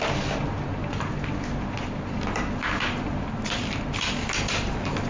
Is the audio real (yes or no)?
yes